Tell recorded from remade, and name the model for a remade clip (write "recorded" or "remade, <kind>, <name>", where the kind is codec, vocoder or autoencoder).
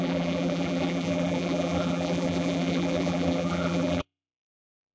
remade, vocoder, BigVGAN v2